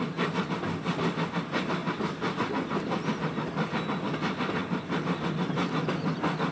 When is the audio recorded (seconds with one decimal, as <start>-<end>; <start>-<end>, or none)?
0.0-6.5